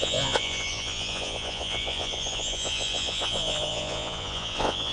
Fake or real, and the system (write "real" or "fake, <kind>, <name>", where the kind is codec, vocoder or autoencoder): fake, vocoder, Vocos